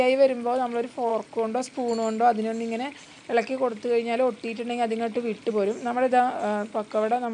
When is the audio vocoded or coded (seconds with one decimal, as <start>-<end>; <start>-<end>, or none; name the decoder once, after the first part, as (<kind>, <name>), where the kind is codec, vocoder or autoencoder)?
none